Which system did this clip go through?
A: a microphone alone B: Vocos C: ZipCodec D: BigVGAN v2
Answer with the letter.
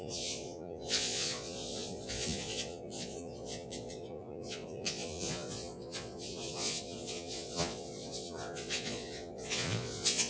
B